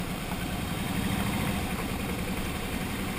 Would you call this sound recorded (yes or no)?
no